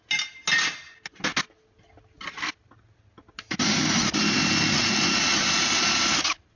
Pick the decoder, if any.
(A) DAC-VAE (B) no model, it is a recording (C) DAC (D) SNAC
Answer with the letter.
B